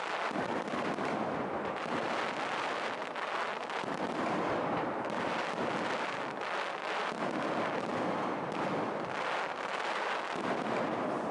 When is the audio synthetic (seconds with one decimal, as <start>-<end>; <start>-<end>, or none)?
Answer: none